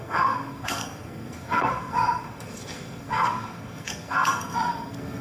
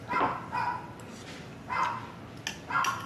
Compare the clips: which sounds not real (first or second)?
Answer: first